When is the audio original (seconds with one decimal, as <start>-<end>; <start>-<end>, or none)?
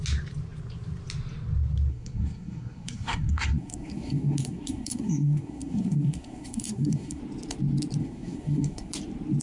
0.0-1.9; 7.2-8.0; 8.9-9.4